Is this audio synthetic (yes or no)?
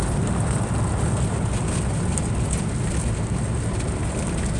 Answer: no